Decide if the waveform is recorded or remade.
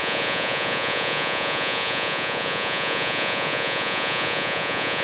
remade